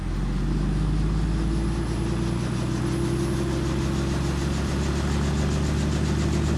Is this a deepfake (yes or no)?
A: no